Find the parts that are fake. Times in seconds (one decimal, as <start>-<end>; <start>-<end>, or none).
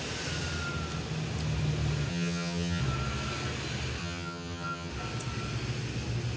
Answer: 2.1-2.8; 4.0-4.9